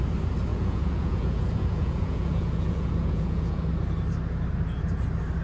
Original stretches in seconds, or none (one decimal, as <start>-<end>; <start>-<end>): 0.0-0.5; 3.7-5.4